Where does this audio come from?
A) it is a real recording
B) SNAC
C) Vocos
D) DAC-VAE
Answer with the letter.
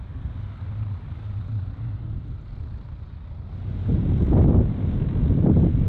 A